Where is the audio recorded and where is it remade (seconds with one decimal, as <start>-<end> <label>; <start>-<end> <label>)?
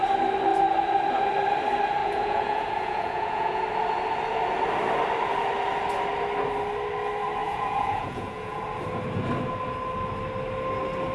0.0-2.0 recorded; 2.0-3.6 remade; 3.6-7.4 recorded; 7.4-8.6 remade; 8.6-11.1 recorded